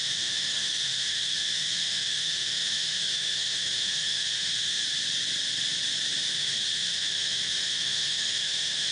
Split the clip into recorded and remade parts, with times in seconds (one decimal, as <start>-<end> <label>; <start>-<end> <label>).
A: 0.0-4.8 remade; 4.8-6.3 recorded; 6.3-8.9 remade